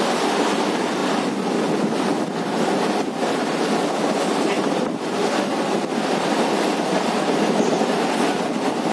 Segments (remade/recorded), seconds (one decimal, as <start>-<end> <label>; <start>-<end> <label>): 0.0-8.9 recorded

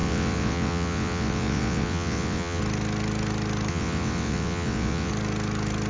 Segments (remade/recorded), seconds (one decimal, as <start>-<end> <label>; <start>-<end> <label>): 0.0-2.6 remade; 2.6-3.7 recorded; 3.7-5.1 remade; 5.1-5.9 recorded

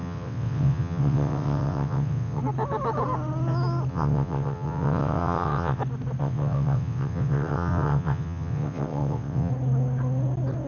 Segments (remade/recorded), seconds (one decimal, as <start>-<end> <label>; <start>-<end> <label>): 0.0-2.4 remade; 2.4-3.9 recorded; 3.9-5.8 remade; 5.8-6.2 recorded; 6.2-9.5 remade; 9.5-10.7 recorded

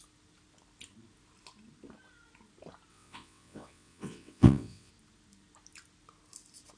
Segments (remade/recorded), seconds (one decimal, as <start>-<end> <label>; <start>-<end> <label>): 0.0-2.9 recorded; 2.9-4.9 remade; 4.9-6.8 recorded

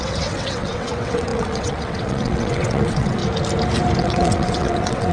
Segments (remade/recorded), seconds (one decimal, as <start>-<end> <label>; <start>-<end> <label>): 0.0-3.2 remade; 3.2-4.0 recorded; 4.0-5.1 remade

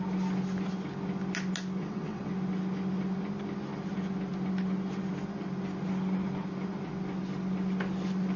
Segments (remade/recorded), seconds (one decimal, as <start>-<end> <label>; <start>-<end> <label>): 0.0-1.8 recorded; 1.8-2.3 remade; 2.3-8.4 recorded